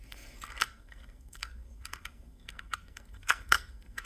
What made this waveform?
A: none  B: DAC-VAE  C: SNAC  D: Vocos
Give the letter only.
C